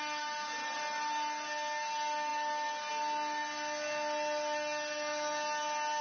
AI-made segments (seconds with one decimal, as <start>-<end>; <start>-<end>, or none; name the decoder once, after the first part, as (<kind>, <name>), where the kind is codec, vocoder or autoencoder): none